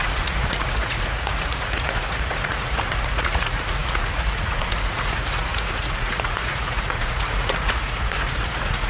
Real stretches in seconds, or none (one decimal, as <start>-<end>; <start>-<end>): none